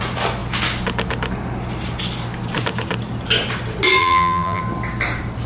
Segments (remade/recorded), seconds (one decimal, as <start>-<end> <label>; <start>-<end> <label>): 0.0-4.0 recorded; 4.0-4.6 remade; 4.6-5.5 recorded